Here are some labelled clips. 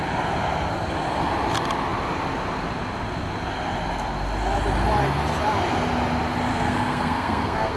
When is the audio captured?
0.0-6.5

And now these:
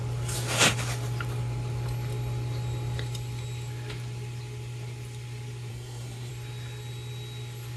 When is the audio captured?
0.0-5.7; 6.3-7.8

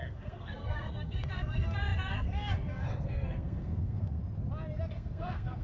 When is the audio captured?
4.2-4.9